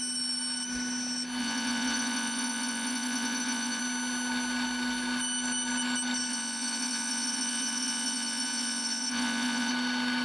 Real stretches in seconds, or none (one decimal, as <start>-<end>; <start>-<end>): 0.0-1.4; 3.8-6.3; 9.7-10.2